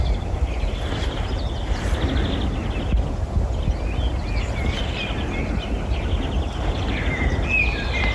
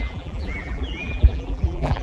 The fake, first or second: second